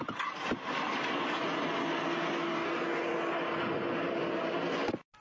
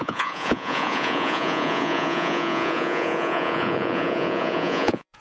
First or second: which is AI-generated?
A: second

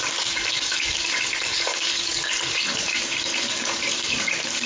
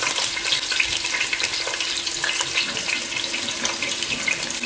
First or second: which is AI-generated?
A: first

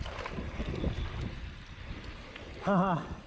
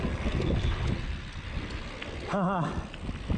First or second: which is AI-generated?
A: first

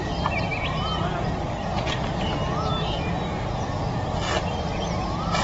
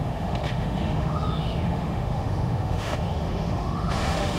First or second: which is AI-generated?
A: second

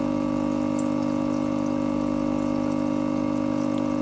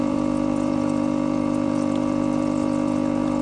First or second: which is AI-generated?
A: second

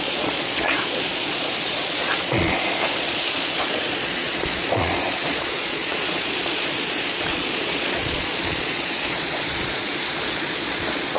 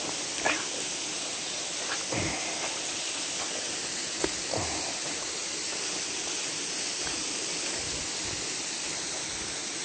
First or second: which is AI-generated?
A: first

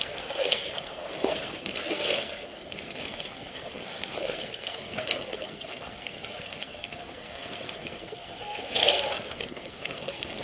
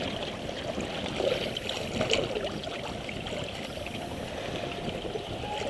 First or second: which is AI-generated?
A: first